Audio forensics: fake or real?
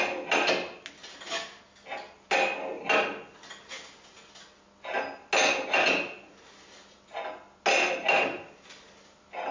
real